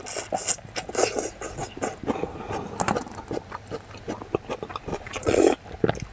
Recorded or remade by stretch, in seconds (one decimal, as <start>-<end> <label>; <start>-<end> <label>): 0.0-4.9 recorded; 4.9-5.4 remade; 5.4-6.1 recorded